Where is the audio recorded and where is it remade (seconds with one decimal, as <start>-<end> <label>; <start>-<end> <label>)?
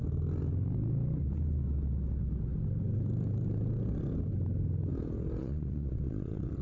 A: 0.0-5.4 recorded; 5.4-6.6 remade